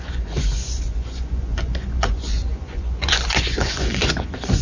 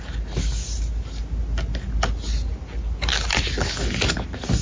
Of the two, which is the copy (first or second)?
first